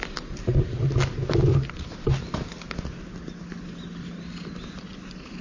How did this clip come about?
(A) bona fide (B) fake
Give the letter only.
A